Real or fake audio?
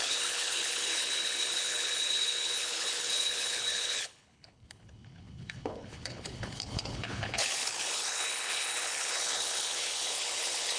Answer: fake